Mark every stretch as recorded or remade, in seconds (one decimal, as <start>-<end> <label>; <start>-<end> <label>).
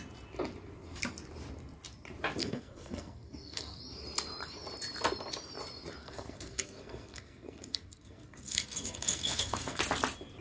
0.0-2.4 recorded; 2.4-3.8 remade; 3.8-6.0 recorded; 6.0-9.8 remade; 9.8-10.4 recorded